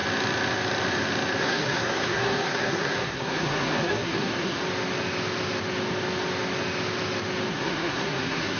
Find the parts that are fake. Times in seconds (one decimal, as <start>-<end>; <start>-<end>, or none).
1.4-4.6; 7.5-8.6